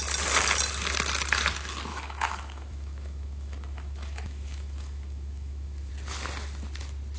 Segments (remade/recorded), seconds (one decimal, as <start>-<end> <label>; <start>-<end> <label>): 0.0-1.9 recorded; 1.9-5.9 remade; 5.9-7.2 recorded